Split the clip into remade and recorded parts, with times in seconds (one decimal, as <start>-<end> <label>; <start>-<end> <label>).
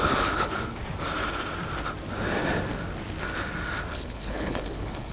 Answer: 0.0-0.8 remade; 0.8-3.9 recorded; 3.9-5.1 remade